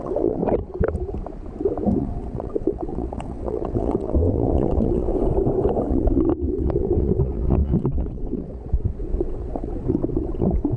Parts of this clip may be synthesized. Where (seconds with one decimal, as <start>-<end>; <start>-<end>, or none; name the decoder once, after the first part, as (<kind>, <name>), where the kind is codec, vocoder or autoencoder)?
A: 0.0-0.4 (vocoder, WaveNeXt); 2.0-5.1; 5.9-10.8